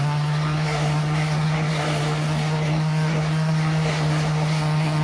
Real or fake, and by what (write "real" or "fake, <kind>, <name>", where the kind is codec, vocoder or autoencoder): fake, codec, SNAC